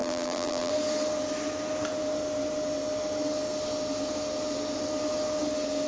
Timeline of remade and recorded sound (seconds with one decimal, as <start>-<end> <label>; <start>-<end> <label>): 0.0-0.7 remade; 0.7-5.9 recorded